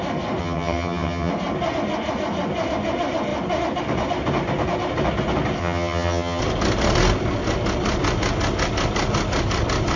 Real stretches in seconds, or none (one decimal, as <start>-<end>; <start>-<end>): 0.0-0.4; 1.3-5.6; 6.4-10.0